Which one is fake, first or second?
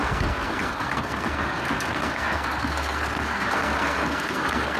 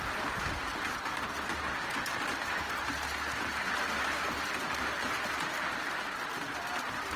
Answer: first